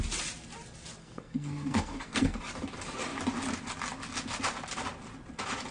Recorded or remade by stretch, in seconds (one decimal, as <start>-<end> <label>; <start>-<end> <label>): 0.0-1.0 recorded; 1.0-2.4 remade; 2.4-5.7 recorded